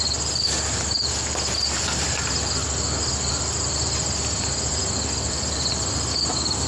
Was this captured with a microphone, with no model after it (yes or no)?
no